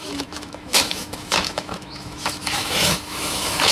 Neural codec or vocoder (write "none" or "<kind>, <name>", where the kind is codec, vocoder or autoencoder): autoencoder, DAC-VAE